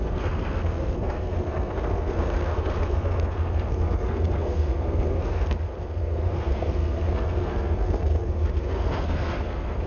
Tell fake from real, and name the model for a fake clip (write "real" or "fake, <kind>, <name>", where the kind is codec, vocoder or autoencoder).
fake, codec, SNAC